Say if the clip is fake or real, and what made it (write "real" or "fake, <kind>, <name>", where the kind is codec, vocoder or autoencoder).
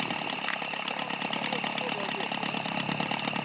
real